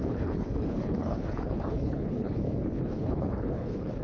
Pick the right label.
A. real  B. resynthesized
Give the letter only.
B